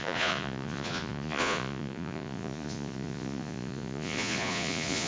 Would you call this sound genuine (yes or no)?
no